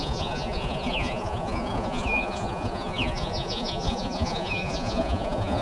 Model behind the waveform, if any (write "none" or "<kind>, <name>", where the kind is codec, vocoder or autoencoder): vocoder, Vocos